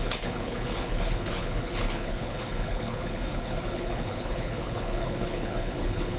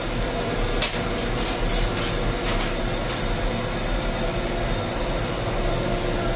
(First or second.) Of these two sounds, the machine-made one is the first